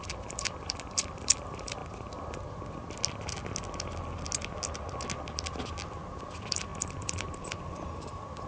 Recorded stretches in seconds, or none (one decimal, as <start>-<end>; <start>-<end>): 1.8-6.3